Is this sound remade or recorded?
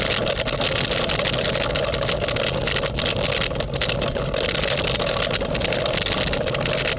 recorded